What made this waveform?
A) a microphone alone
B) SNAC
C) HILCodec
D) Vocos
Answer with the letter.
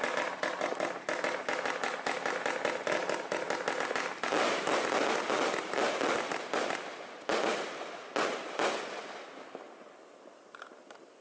A